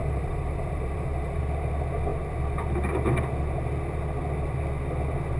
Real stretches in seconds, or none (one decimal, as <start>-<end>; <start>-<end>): 1.4-5.4